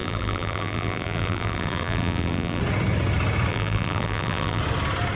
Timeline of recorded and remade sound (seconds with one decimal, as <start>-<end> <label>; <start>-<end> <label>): 0.0-2.6 remade; 2.6-3.5 recorded; 3.5-4.6 remade; 4.6-5.1 recorded